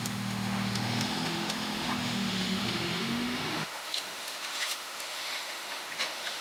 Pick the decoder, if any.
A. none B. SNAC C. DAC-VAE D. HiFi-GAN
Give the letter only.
C